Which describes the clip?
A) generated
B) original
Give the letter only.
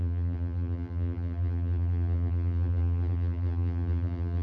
A